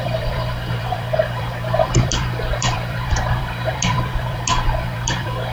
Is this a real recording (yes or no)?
no